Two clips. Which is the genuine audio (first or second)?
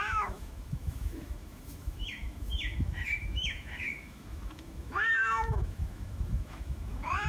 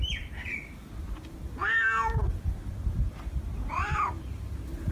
second